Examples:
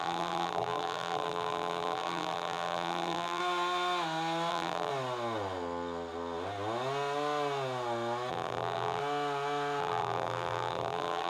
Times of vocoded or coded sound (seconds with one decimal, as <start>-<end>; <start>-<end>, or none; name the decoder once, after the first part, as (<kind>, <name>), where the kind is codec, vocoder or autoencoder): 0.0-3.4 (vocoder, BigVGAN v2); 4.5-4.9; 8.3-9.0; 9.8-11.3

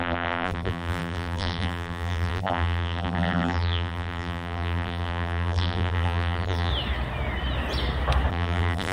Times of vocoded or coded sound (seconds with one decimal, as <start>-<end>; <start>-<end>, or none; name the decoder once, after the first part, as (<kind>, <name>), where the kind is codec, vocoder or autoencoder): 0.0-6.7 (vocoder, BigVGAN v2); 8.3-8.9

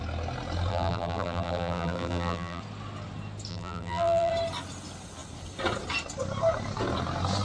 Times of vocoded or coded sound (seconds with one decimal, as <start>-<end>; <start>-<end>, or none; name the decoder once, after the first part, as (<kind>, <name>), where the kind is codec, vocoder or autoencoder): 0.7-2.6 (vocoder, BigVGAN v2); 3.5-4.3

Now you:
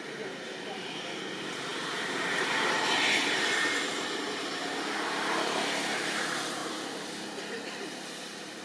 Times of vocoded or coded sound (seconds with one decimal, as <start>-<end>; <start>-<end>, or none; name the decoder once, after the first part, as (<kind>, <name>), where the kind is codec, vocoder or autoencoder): 0.0-6.6 (vocoder, BigVGAN v2); 8.2-8.6